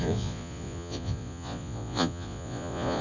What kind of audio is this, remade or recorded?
remade